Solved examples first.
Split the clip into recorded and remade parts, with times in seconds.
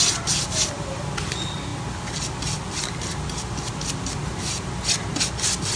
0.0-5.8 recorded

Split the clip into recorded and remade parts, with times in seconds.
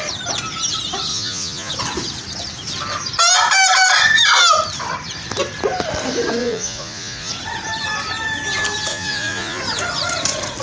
0.0-1.1 recorded; 1.1-1.7 remade; 1.7-6.4 recorded; 6.4-7.3 remade; 7.3-8.9 recorded; 8.9-9.6 remade; 9.6-10.6 recorded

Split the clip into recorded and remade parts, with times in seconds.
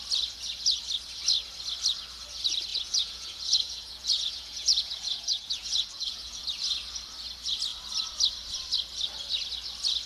0.0-2.7 recorded; 2.7-6.4 remade; 6.4-10.1 recorded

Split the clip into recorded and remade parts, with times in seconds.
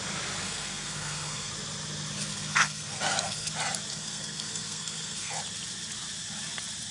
0.0-0.4 recorded; 0.4-1.5 remade; 1.5-2.3 recorded; 2.3-3.5 remade; 3.5-3.9 recorded; 3.9-5.4 remade; 5.4-6.9 recorded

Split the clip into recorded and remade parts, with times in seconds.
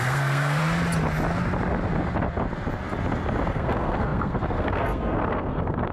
0.0-0.6 remade; 0.6-3.5 recorded; 3.5-5.9 remade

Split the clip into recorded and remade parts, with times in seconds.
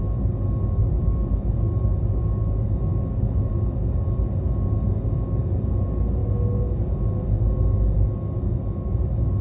0.0-2.9 recorded; 2.9-3.5 remade; 3.5-9.4 recorded